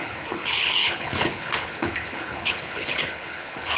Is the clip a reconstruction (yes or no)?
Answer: yes